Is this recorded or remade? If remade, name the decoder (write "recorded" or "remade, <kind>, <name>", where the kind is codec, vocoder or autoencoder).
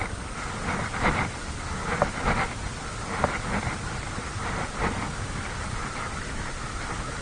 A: recorded